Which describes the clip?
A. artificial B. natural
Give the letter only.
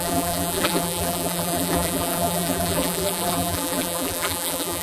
A